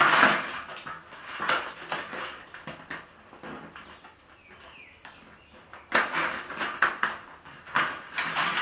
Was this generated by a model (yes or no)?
no